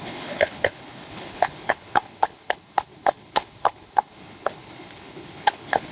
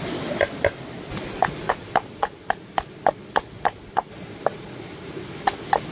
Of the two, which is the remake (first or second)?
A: first